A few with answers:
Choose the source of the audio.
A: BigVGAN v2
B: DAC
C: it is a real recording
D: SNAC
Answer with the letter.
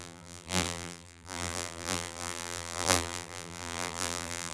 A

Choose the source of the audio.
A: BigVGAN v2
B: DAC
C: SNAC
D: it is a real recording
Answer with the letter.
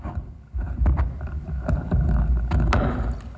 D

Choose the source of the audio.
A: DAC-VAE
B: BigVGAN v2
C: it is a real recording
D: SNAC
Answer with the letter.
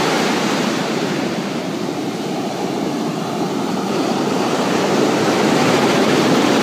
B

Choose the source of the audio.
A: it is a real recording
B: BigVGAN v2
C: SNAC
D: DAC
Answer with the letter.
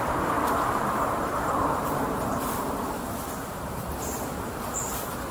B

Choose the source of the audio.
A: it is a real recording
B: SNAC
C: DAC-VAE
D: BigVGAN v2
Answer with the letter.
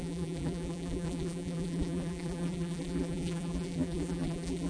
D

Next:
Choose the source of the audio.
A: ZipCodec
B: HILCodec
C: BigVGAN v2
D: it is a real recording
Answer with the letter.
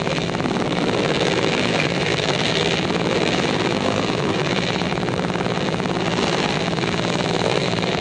C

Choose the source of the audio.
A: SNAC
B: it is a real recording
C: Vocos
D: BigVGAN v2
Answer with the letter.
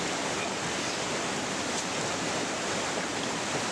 B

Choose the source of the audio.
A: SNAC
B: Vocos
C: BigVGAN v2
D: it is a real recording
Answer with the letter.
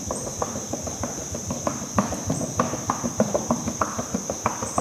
D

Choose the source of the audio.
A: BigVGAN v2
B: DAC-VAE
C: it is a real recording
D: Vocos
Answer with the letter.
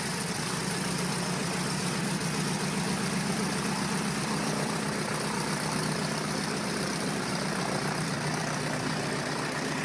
A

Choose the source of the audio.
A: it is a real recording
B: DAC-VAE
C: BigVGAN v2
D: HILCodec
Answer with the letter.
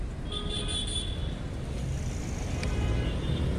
A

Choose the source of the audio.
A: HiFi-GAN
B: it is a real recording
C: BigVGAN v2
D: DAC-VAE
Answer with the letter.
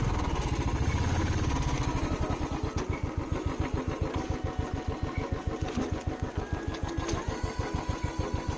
B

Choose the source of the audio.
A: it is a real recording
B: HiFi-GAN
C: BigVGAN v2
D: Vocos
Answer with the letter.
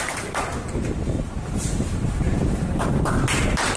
A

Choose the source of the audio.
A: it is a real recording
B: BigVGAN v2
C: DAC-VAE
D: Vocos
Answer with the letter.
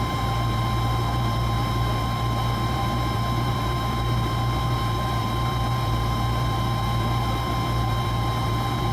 B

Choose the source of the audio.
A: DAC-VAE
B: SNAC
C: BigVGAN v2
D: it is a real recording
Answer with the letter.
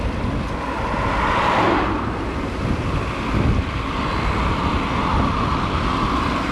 C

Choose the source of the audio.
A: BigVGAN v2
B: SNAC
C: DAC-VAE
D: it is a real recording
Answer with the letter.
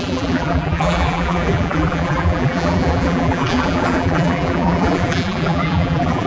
A